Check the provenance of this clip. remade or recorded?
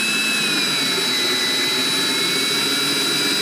recorded